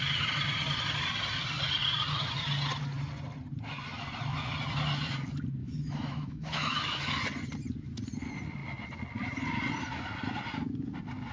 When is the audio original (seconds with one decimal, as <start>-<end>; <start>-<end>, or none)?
0.0-5.6; 7.2-11.3